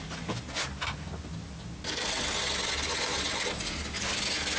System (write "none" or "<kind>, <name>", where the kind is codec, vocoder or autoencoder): none